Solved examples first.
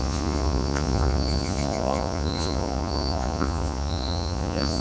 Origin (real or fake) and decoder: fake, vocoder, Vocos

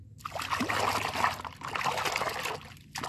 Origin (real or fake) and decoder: real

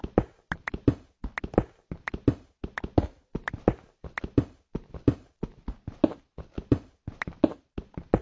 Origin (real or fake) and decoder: real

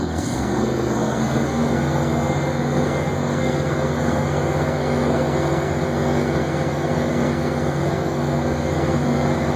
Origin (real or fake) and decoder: fake, codec, SNAC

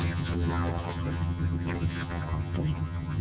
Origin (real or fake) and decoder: fake, vocoder, HiFi-GAN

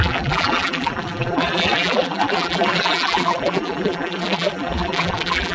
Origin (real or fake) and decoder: fake, vocoder, BigVGAN v2